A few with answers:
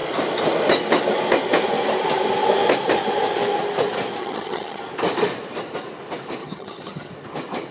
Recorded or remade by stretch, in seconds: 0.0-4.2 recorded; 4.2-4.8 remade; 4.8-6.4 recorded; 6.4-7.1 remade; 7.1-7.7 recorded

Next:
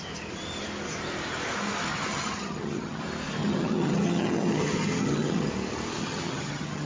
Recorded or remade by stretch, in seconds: 0.0-1.9 recorded; 1.9-3.0 remade; 3.0-3.4 recorded; 3.4-5.5 remade; 5.5-6.0 recorded; 6.0-6.9 remade

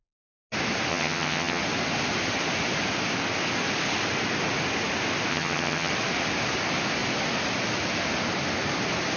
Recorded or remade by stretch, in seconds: 0.0-0.9 recorded; 0.9-1.6 remade; 1.6-5.3 recorded; 5.3-5.9 remade; 5.9-9.2 recorded

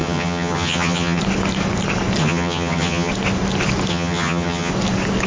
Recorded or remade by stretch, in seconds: 0.0-1.2 remade; 1.2-2.2 recorded; 2.2-3.1 remade; 3.1-3.9 recorded; 3.9-4.7 remade; 4.7-5.3 recorded

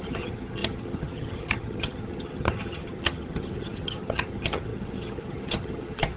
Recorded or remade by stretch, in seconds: 0.0-6.2 remade

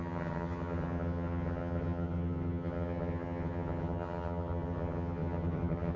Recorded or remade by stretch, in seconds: 0.0-6.0 remade

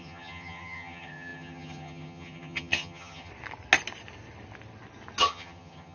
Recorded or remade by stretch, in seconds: 0.0-3.3 remade; 3.3-5.2 recorded; 5.2-5.9 remade